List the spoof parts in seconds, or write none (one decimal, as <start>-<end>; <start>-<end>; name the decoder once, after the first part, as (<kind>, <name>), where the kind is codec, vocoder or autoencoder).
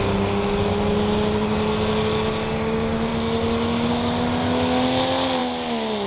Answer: none